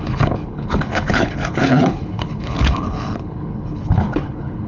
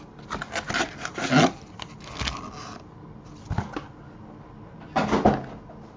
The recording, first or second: second